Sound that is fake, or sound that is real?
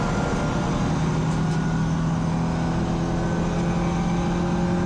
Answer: real